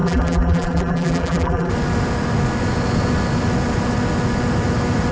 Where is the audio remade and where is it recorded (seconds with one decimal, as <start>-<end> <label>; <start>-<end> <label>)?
0.0-1.7 remade; 1.7-5.1 recorded